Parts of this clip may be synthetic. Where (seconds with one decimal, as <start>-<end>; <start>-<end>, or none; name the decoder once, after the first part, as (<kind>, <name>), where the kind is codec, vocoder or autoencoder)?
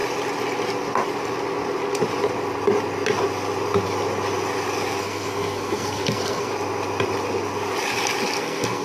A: 5.0-6.5 (codec, SNAC); 8.4-8.8